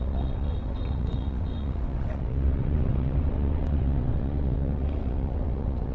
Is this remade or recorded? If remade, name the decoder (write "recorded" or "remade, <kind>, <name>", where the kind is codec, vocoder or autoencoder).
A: remade, vocoder, WaveNeXt